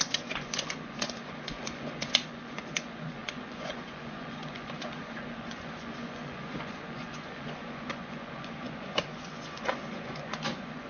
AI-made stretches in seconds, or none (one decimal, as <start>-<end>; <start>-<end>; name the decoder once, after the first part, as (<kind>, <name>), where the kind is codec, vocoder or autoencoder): 0.0-10.9 (vocoder, Vocos)